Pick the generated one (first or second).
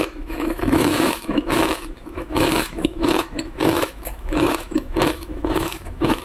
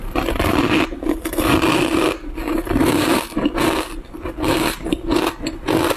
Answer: first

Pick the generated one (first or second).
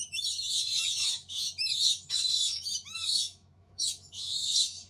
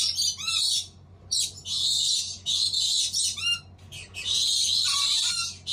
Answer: first